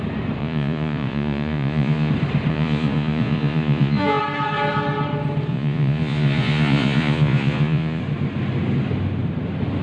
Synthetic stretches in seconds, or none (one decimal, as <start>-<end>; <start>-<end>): 0.4-2.1; 2.5-4.2; 5.5-8.0